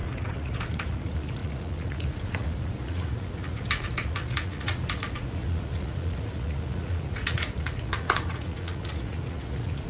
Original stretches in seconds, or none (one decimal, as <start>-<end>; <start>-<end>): none